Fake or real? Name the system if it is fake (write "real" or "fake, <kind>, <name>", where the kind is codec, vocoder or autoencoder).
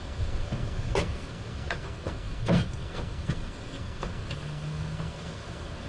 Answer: fake, codec, SNAC